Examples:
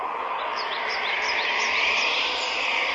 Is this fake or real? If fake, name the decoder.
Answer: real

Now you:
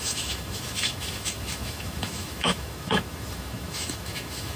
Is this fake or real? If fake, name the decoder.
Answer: fake, autoencoder, DAC-VAE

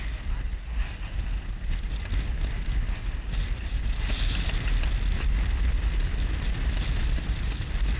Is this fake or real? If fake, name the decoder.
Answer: real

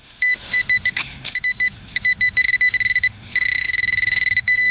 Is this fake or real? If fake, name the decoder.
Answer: fake, autoencoder, DAC-VAE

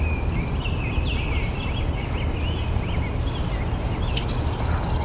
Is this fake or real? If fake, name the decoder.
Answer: real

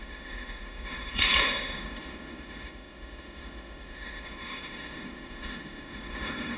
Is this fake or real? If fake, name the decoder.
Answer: fake, autoencoder, DAC-VAE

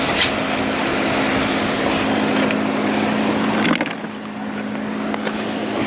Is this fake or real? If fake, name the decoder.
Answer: real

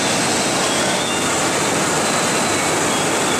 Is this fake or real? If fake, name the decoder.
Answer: real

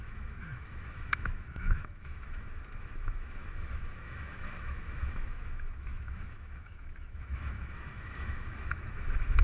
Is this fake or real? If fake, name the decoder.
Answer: fake, autoencoder, DAC-VAE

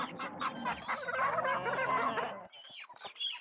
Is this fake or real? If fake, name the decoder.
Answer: real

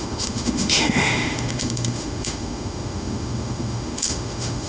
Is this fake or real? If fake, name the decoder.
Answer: fake, autoencoder, DAC-VAE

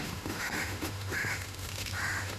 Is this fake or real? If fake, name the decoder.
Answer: fake, autoencoder, DAC-VAE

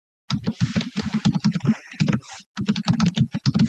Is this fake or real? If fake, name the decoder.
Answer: real